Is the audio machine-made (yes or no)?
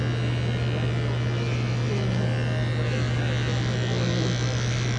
no